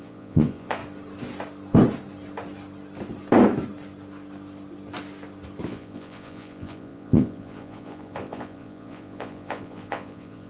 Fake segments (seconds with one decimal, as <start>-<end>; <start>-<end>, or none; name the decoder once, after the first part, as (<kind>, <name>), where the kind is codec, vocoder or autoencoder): 0.0-0.8 (vocoder, Vocos); 5.7-10.5